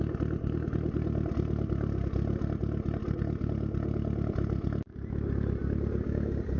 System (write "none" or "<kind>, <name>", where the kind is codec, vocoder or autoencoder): none